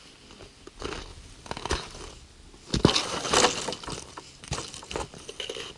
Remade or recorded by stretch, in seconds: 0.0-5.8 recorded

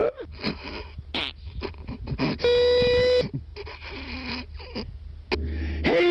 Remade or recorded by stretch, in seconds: 0.0-6.1 recorded

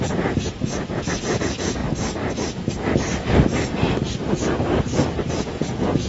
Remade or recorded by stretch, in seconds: 0.0-1.8 remade; 1.8-5.3 recorded; 5.3-6.1 remade